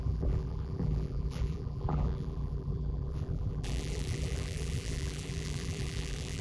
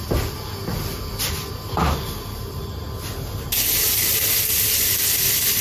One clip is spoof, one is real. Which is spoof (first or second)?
first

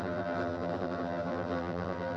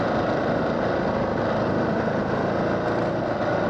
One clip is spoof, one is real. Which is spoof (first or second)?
first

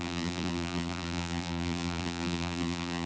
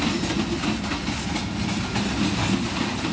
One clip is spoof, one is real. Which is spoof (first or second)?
first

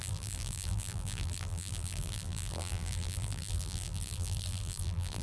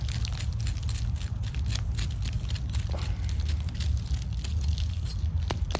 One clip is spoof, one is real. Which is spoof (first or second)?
first